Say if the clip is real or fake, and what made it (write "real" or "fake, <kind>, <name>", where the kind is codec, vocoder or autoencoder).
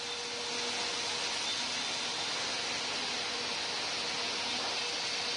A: real